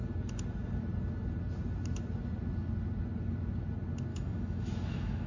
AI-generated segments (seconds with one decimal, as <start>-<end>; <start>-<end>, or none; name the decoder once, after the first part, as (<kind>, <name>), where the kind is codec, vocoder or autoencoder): 4.1-5.3 (autoencoder, DAC-VAE)